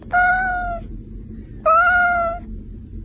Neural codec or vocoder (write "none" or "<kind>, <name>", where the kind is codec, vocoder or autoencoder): none